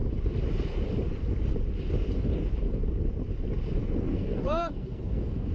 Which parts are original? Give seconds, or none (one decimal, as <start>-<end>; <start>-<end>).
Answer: 0.0-4.1